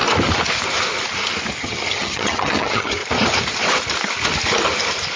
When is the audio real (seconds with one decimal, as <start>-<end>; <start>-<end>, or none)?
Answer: 0.0-1.6; 3.0-5.2